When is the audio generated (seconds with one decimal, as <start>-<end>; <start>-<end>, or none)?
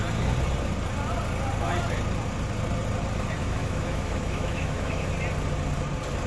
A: 3.4-5.1